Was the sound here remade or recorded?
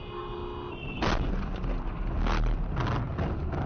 recorded